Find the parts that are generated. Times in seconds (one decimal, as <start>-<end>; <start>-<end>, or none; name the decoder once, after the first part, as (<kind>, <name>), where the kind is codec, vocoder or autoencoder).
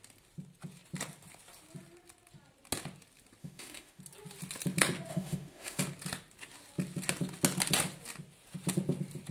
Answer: 3.4-4.0 (autoencoder, DAC-VAE); 5.1-5.8